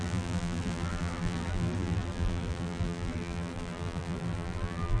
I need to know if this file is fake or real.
fake